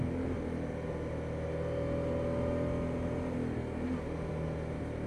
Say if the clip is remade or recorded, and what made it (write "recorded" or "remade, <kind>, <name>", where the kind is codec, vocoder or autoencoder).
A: recorded